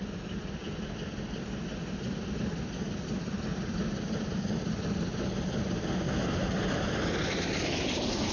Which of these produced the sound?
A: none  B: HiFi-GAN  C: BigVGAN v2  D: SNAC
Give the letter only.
A